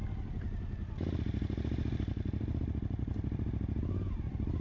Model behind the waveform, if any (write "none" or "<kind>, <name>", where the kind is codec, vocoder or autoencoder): none